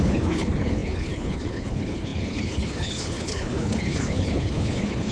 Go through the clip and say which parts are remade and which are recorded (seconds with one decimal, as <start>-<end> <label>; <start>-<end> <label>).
0.0-5.1 remade